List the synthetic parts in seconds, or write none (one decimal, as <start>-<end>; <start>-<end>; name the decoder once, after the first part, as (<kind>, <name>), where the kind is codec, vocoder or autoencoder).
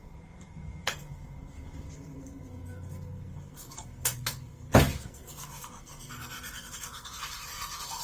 0.0-8.0 (codec, SNAC)